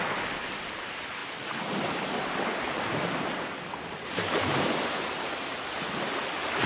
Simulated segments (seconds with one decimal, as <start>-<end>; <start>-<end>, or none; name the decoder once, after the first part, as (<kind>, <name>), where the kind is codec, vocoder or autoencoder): none